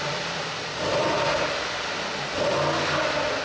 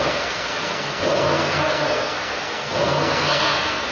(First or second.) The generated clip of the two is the second